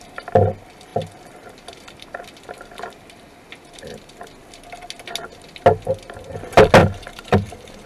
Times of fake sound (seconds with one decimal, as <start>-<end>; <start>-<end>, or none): 6.8-7.9